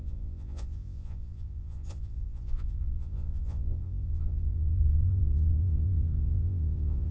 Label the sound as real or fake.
fake